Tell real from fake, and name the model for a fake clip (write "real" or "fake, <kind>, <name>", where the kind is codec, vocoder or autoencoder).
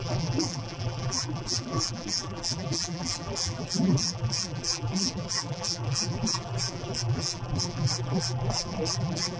fake, vocoder, BigVGAN v2